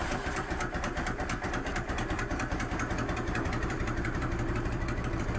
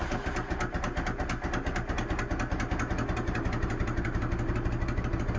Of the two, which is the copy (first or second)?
first